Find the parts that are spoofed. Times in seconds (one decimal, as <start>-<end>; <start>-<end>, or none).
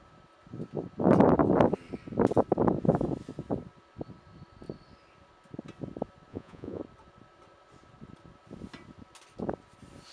6.3-6.8